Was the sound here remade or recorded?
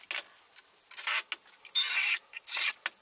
recorded